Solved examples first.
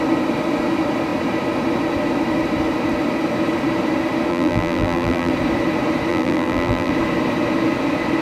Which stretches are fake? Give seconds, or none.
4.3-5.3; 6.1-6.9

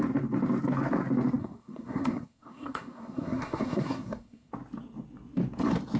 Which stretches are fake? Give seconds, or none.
1.4-4.5

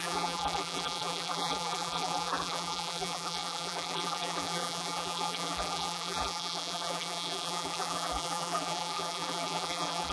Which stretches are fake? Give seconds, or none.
0.0-10.1

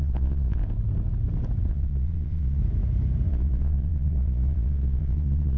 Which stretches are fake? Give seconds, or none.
0.0-0.6; 1.7-2.6; 3.3-5.6

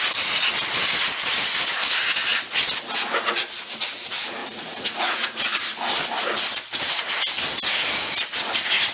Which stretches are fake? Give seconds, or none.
4.4-5.6

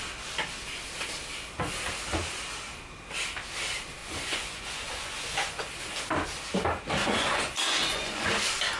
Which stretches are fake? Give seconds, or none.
4.0-5.6; 7.0-8.3